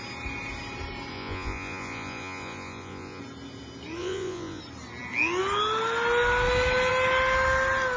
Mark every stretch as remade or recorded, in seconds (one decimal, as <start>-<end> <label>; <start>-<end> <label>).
0.0-1.1 recorded; 1.1-3.2 remade; 3.2-4.0 recorded; 4.0-4.6 remade; 4.6-8.0 recorded